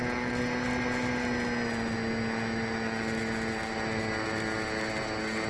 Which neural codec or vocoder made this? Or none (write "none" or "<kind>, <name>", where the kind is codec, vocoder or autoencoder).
none